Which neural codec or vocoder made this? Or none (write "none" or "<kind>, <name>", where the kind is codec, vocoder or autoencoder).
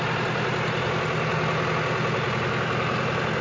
none